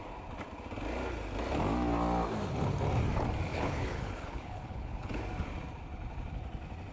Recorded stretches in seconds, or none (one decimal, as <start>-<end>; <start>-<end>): 0.0-3.5; 5.2-6.9